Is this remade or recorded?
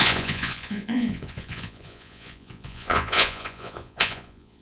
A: remade